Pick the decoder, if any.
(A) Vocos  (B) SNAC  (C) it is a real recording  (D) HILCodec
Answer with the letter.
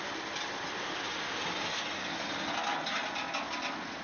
C